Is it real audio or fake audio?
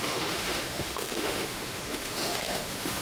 fake